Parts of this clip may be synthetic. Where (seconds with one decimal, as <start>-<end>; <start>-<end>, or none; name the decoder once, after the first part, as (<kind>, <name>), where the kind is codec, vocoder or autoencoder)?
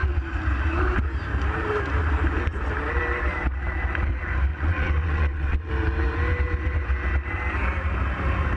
4.5-5.7 (vocoder, WaveNeXt)